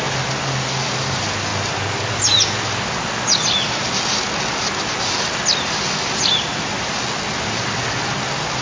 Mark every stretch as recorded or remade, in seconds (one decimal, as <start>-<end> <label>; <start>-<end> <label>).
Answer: 0.0-8.6 recorded